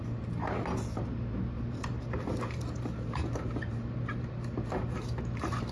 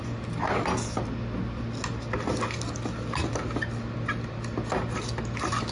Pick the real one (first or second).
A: second